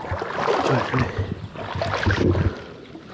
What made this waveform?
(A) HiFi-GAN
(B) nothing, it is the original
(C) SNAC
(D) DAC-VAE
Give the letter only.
B